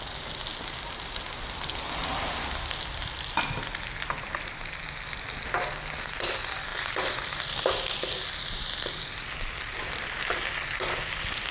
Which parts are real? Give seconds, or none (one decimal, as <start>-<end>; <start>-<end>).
0.0-11.5